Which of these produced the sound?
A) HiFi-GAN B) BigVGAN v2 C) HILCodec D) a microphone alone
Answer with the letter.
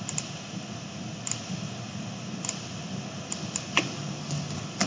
D